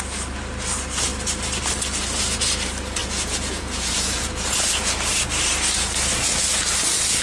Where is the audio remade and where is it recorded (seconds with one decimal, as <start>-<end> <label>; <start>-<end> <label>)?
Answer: 0.0-3.0 recorded; 3.0-5.1 remade; 5.1-7.2 recorded